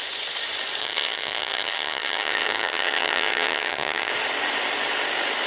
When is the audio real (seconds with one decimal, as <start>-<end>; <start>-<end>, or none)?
0.0-0.8; 4.1-5.5